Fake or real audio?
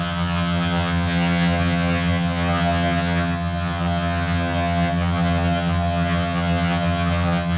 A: fake